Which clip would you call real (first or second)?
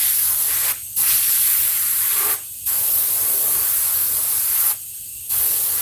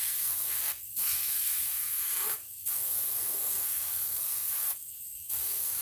first